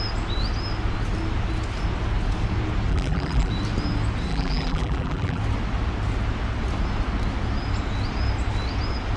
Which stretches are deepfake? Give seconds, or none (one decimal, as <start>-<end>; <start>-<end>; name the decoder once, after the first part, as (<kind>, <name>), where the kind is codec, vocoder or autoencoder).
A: 2.9-3.5 (vocoder, BigVGAN v2); 4.3-5.4